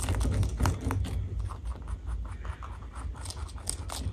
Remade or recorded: recorded